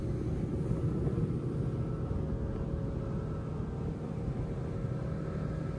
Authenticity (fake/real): real